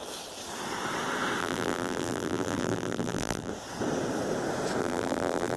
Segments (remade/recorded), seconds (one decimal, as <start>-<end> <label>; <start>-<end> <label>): 0.0-1.4 recorded; 1.4-3.5 remade; 3.5-4.8 recorded; 4.8-5.6 remade